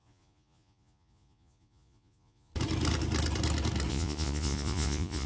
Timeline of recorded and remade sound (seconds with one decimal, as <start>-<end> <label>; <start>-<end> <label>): 0.0-2.5 remade; 2.5-3.9 recorded; 3.9-5.3 remade